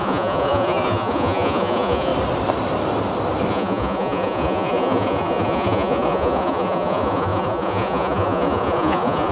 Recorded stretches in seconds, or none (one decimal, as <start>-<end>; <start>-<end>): 2.1-3.5